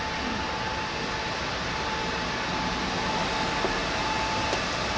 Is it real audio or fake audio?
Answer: real